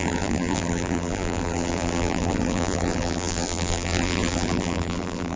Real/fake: fake